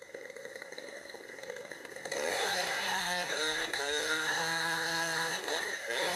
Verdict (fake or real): fake